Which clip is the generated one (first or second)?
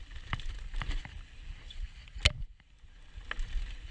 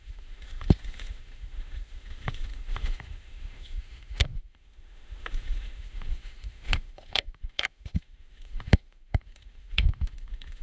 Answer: second